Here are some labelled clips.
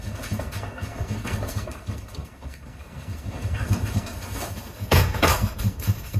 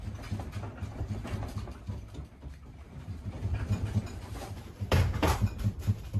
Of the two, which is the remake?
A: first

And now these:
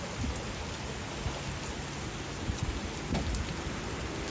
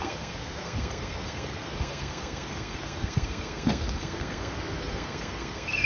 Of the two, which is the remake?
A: second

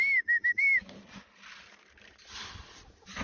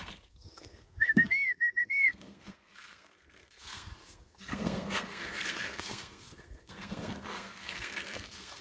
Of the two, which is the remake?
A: second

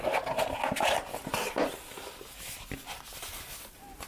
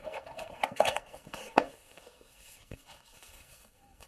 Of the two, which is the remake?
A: second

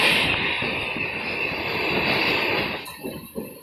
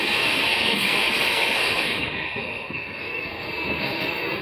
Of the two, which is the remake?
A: second